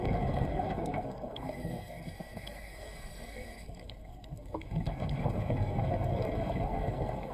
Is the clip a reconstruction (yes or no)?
yes